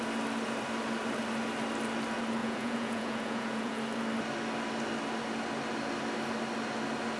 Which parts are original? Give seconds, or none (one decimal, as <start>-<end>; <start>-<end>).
0.0-2.4; 3.8-7.2